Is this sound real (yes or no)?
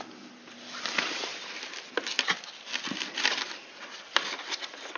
no